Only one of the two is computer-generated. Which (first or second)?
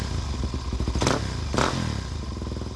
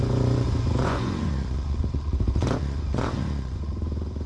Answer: second